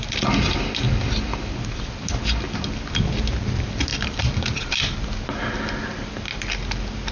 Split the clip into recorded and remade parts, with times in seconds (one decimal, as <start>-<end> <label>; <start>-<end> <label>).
0.0-3.9 recorded; 3.9-4.7 remade; 4.7-7.1 recorded